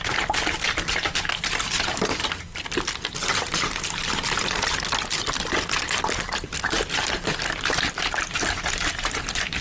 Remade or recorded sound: recorded